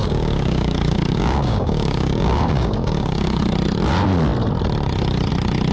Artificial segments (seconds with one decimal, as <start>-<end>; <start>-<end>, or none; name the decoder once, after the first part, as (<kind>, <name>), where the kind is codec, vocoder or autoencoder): 0.0-3.4 (codec, DAC)

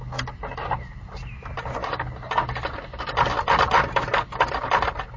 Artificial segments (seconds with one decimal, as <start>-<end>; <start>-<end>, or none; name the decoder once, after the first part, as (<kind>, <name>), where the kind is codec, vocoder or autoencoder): none

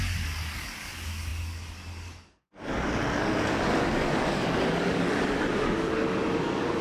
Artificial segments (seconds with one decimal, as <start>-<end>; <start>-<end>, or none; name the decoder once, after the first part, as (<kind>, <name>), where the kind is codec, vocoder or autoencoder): 0.0-6.8 (codec, DAC)

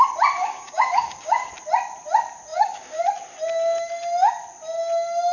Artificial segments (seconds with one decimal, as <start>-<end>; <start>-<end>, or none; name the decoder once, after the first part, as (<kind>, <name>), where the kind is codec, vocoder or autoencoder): 0.4-1.5 (codec, DAC); 2.5-3.0